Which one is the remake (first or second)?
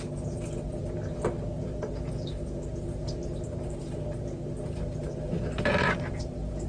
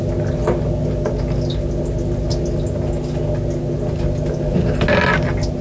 first